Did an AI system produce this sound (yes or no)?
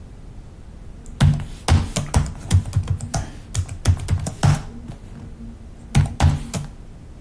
no